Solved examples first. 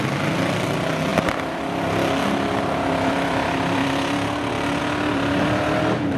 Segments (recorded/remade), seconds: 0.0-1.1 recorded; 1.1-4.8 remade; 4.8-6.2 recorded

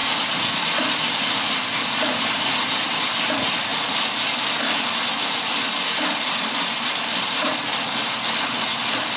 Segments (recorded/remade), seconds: 0.0-0.6 recorded; 0.6-3.7 remade; 3.7-6.2 recorded; 6.2-9.2 remade

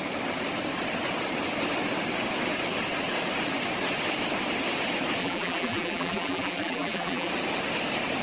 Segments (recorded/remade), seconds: 0.0-5.2 recorded; 5.2-7.3 remade; 7.3-8.2 recorded

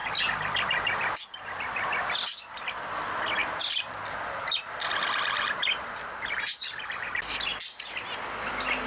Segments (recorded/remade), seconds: 0.0-8.9 recorded